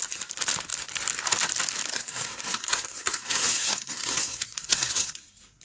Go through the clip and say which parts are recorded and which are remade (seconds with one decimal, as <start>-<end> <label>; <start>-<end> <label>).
0.0-1.9 recorded; 1.9-5.6 remade